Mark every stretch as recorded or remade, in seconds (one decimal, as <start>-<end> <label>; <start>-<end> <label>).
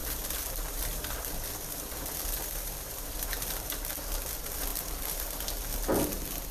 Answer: 0.0-3.9 remade; 3.9-6.5 recorded